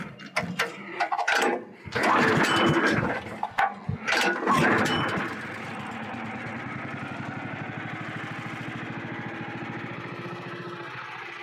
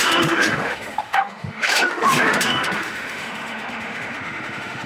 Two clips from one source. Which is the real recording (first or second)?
first